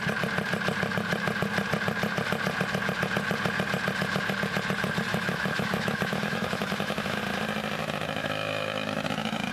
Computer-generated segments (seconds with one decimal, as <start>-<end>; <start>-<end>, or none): 5.1-7.2; 7.8-9.5